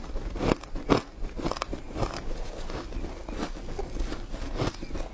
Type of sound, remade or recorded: recorded